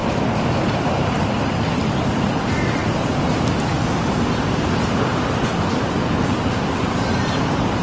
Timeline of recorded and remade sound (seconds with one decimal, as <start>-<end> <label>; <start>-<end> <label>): 0.0-7.8 recorded